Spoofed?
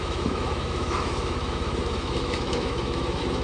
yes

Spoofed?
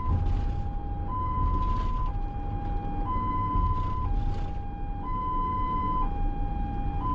no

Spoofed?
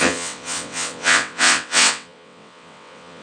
yes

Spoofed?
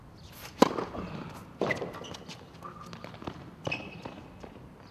no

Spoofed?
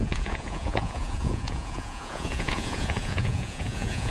yes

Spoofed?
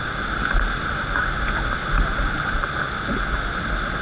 no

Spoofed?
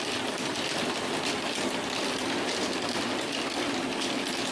no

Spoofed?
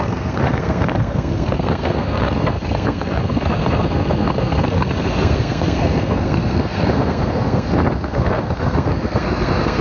yes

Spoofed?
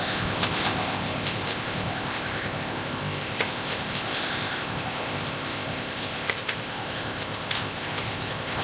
yes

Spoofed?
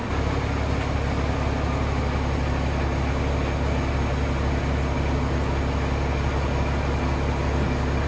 no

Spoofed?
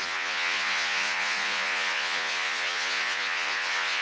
yes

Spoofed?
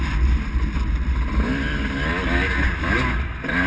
no